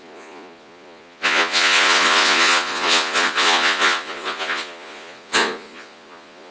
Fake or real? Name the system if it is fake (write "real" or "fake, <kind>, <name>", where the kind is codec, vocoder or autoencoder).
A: fake, vocoder, Vocos